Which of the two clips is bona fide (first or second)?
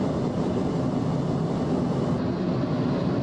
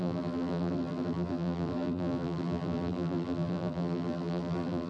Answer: first